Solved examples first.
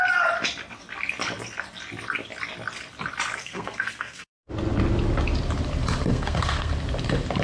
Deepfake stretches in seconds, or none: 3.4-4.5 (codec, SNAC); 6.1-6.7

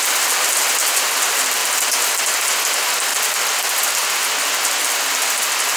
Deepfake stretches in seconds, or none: none

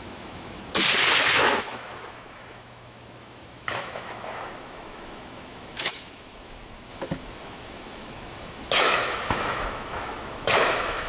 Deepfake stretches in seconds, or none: 0.0-0.6 (autoencoder, DAC-VAE); 1.2-11.1

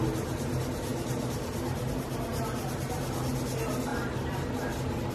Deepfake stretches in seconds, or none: none

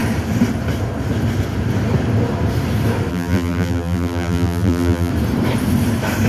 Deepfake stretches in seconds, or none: 3.1-5.1 (vocoder, BigVGAN v2)

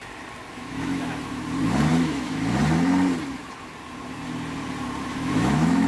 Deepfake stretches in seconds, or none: 0.5-1.4 (autoencoder, DAC-VAE); 1.9-2.6; 5.1-5.9

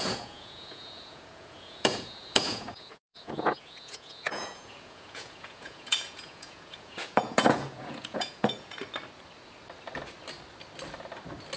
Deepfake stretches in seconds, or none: 0.0-8.8 (vocoder, Vocos)

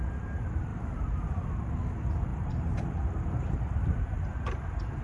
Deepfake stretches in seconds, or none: 0.7-1.5 (vocoder, BigVGAN v2); 2.3-4.0